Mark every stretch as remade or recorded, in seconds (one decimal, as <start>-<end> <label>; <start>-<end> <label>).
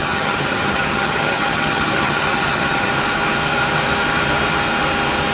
0.0-2.9 remade; 2.9-5.3 recorded